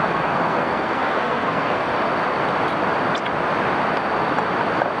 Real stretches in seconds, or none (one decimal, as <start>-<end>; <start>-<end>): 1.9-5.0